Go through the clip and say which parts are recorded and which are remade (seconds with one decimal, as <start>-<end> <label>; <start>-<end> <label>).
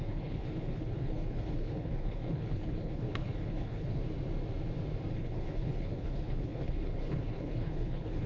0.0-4.0 remade; 4.0-5.1 recorded; 5.1-8.3 remade